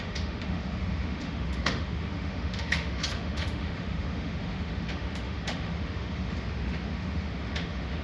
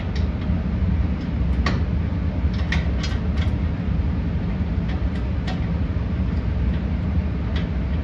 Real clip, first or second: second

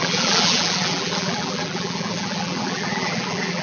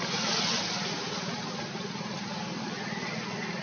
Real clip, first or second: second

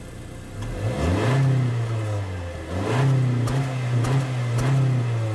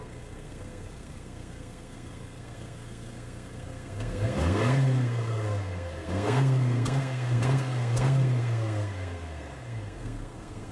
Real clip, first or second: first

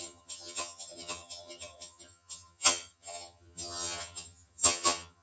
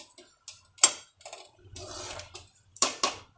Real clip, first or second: second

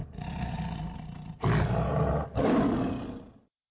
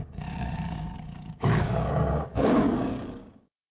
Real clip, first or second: first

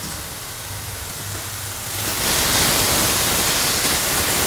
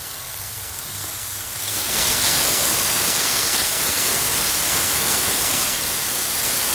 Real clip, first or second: first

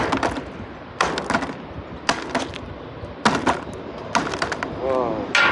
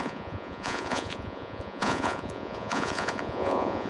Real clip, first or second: first